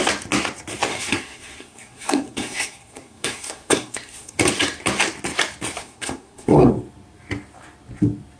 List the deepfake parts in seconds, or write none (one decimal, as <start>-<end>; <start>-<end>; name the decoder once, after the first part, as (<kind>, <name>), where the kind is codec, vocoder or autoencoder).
0.9-4.4 (codec, SNAC); 5.8-6.7